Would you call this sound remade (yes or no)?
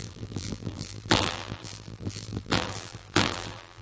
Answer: yes